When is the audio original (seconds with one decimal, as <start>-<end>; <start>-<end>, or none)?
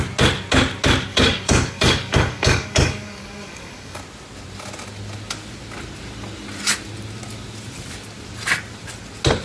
0.0-1.1; 4.0-9.4